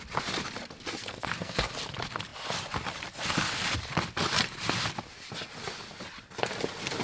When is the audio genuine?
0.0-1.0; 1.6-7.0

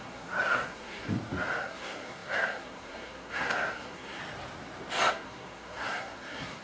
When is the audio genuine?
1.1-1.6; 4.2-5.1

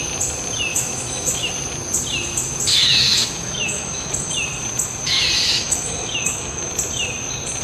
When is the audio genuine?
0.0-0.7; 1.5-2.7; 4.3-5.5; 6.7-7.6

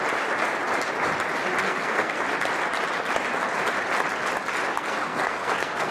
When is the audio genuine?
0.0-1.6; 2.2-4.7

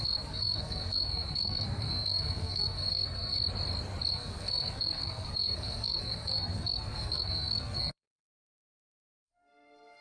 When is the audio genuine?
3.4-4.1

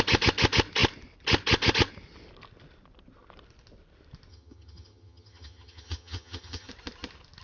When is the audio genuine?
0.0-4.3; 6.7-7.4

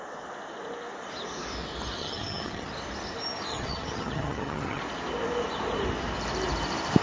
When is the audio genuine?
0.0-2.0; 2.7-3.5; 4.8-7.0